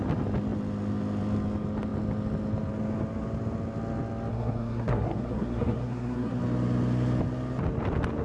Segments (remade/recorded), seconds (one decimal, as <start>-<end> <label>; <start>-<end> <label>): 0.0-4.3 recorded; 4.3-6.4 remade; 6.4-8.2 recorded